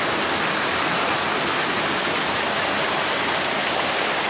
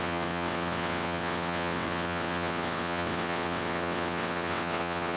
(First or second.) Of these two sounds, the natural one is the first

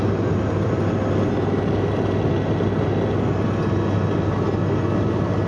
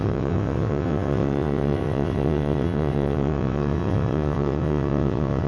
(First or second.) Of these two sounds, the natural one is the first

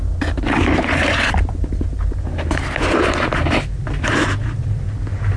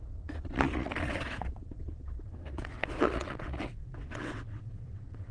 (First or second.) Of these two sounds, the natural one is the first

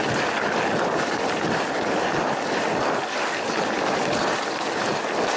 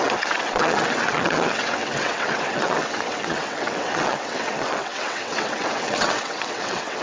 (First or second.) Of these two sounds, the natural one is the first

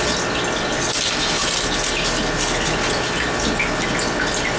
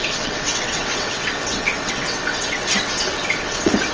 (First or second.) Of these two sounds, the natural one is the first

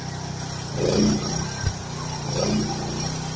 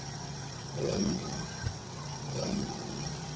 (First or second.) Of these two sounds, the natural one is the first